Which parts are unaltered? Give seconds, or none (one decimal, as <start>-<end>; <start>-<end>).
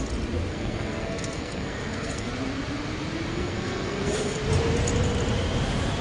0.0-0.5; 2.3-3.3; 4.4-6.0